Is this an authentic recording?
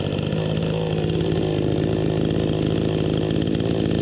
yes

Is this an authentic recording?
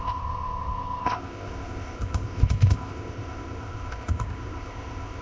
no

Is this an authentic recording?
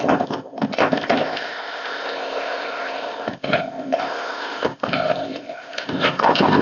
no